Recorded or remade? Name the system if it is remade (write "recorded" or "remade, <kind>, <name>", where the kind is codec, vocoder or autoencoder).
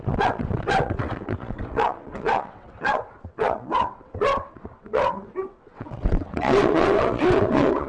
remade, vocoder, WaveNeXt